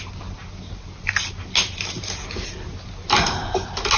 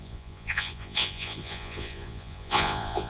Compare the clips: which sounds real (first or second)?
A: first